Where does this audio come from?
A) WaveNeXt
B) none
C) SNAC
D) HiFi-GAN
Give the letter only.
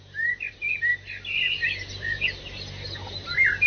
B